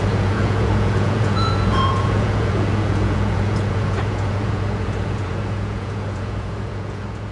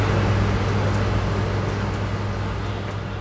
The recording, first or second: second